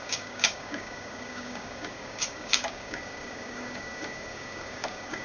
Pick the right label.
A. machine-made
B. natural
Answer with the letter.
A